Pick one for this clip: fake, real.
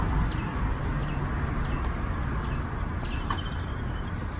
real